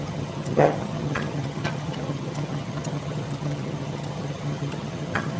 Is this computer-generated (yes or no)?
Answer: yes